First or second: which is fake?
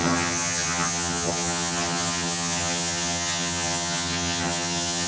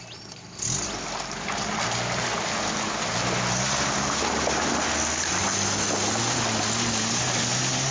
first